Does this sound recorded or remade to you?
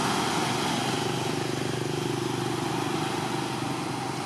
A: recorded